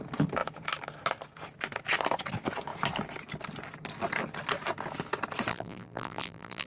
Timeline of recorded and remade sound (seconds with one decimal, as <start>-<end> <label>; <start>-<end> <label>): 0.0-5.5 recorded; 5.5-6.7 remade